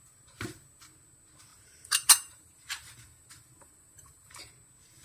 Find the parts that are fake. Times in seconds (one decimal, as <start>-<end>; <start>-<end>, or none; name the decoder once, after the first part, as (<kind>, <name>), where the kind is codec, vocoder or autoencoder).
1.5-4.5 (vocoder, BigVGAN v2)